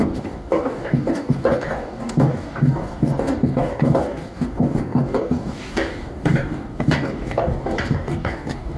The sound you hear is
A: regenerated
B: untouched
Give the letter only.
A